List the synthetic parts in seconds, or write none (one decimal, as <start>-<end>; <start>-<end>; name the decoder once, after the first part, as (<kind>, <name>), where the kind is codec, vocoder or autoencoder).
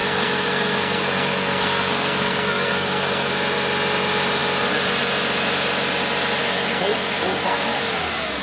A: 0.0-3.3 (codec, SNAC); 6.4-7.8